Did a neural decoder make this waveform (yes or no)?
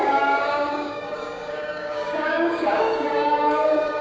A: yes